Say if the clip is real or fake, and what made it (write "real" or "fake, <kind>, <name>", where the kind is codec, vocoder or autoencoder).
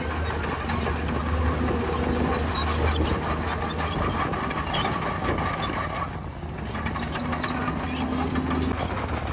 real